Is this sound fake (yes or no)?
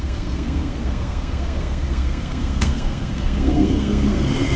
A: yes